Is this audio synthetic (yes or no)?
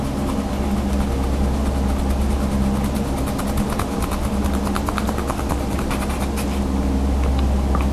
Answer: no